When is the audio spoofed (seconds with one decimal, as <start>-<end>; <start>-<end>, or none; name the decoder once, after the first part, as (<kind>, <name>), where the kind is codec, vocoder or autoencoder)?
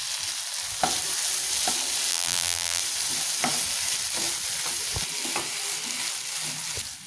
2.1-2.8 (vocoder, BigVGAN v2)